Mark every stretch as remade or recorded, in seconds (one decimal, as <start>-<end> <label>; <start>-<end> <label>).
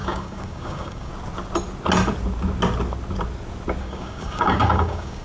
0.0-1.1 remade; 1.1-3.8 recorded; 3.8-5.2 remade